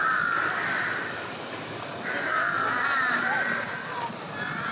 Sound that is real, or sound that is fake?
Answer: real